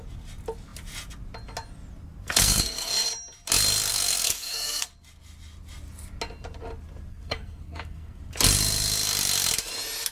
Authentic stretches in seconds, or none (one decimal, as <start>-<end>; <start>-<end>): 0.0-2.2; 2.9-3.9; 4.9-7.1; 8.2-10.1

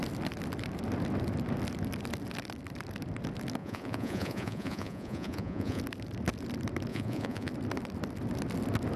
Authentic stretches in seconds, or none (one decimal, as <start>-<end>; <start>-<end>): 0.0-3.6; 5.8-6.9; 7.5-9.0

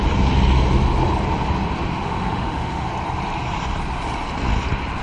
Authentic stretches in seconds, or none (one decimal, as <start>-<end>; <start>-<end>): 0.0-1.9; 2.9-5.0

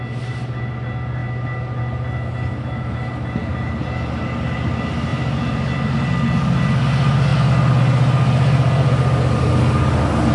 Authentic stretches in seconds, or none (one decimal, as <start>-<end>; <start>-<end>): 0.0-10.3

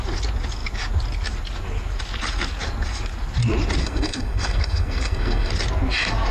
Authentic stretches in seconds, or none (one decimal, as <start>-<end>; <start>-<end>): 0.0-3.8; 5.5-6.3

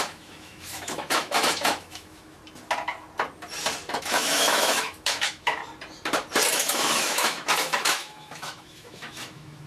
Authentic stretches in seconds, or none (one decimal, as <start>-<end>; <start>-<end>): 2.4-4.0; 5.6-6.5

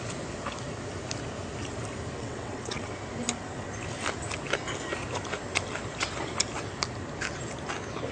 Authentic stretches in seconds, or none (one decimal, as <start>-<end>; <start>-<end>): 0.0-2.2; 2.9-8.1